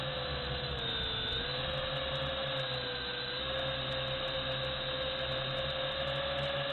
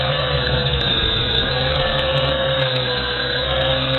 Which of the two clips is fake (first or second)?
second